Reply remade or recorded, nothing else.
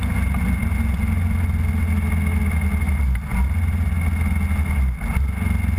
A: recorded